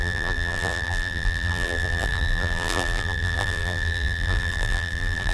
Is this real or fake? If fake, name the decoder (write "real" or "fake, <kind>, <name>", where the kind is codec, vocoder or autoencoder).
fake, vocoder, BigVGAN v2